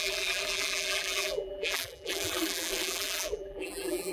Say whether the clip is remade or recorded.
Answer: remade